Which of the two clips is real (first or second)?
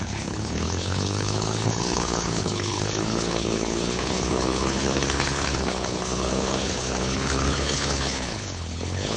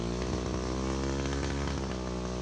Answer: second